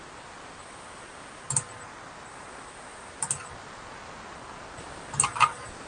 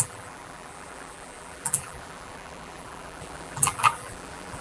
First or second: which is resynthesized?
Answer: second